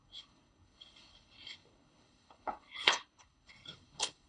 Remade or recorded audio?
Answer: remade